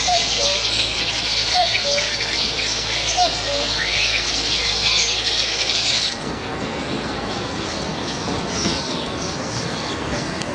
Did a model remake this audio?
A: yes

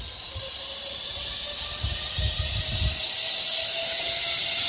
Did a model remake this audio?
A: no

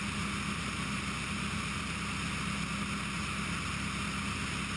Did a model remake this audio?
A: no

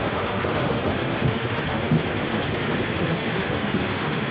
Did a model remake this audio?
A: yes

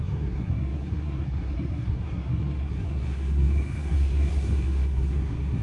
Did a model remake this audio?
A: yes